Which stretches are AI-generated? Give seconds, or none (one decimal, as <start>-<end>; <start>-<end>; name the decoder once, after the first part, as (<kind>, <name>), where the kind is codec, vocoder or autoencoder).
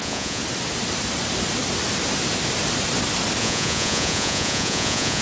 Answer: 0.0-0.4 (vocoder, Vocos); 3.4-5.2